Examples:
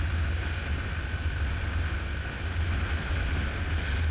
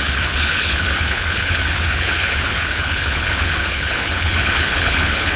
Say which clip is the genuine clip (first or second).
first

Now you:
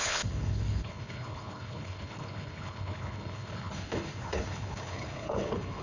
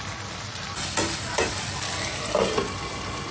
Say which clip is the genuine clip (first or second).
second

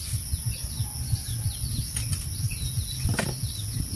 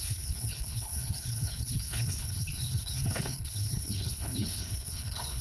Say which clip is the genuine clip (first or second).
first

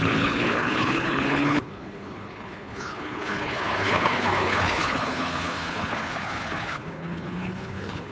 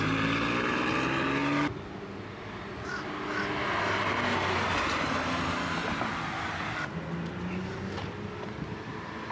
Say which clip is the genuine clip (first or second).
second